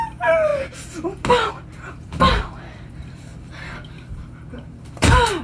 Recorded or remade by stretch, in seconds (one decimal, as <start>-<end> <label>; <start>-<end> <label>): 0.0-0.5 remade; 0.5-1.5 recorded; 1.5-5.4 remade